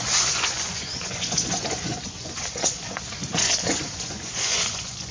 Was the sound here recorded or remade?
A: remade